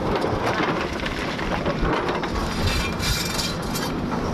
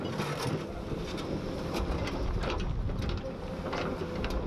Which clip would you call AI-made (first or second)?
first